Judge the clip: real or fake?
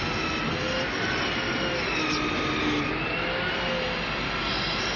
real